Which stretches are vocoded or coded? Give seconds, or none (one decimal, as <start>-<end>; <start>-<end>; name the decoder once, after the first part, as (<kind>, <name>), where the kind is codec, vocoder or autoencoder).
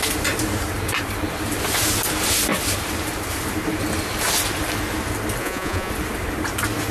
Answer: 5.4-5.9 (vocoder, Vocos)